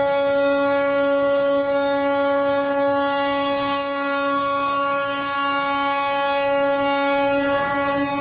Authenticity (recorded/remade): remade